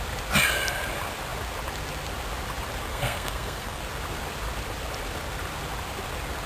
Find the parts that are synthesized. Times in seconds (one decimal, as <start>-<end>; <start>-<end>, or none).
2.9-3.8